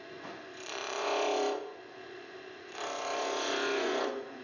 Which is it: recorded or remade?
remade